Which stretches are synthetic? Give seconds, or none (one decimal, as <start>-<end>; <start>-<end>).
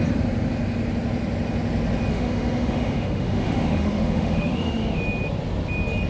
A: 2.1-5.0